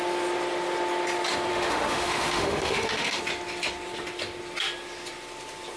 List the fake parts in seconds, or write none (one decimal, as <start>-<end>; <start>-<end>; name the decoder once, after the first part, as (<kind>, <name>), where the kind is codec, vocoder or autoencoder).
1.5-3.2 (autoencoder, DAC-VAE)